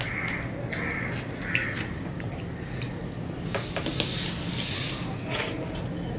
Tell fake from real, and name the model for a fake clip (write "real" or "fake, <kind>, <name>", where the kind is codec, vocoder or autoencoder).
real